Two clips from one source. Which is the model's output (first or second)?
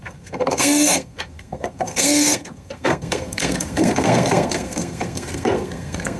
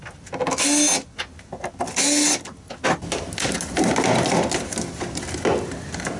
first